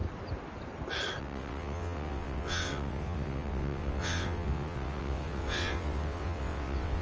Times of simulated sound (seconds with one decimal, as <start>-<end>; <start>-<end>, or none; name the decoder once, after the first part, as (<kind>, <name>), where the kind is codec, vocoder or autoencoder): 1.2-7.0 (vocoder, WaveNeXt)